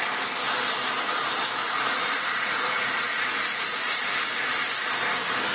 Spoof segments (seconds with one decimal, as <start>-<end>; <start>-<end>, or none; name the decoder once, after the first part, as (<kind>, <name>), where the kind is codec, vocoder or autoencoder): 1.6-4.9 (vocoder, Vocos)